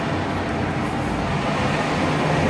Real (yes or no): yes